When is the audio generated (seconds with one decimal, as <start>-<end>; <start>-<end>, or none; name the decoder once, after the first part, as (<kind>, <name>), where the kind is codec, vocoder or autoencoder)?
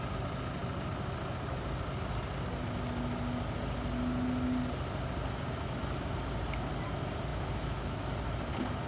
7.3-8.0 (autoencoder, DAC-VAE)